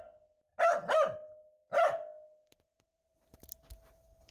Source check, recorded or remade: recorded